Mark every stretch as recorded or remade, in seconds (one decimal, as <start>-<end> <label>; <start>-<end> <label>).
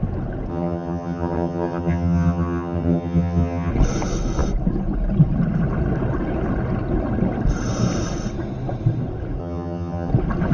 0.0-0.5 recorded; 0.5-3.7 remade; 3.7-9.4 recorded; 9.4-10.1 remade; 10.1-10.5 recorded